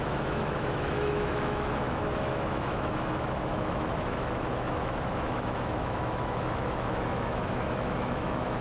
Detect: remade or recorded remade